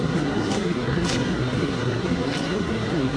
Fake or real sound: fake